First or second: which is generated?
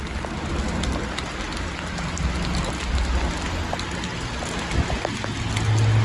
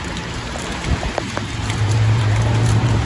second